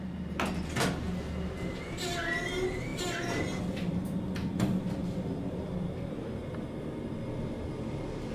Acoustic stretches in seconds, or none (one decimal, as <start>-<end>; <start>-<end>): 0.0-8.3